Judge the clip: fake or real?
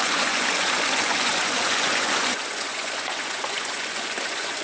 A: fake